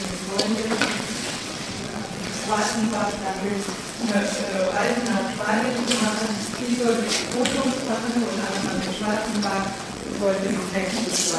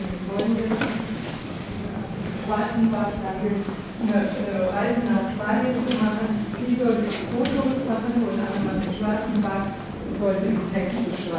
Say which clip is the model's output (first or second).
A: first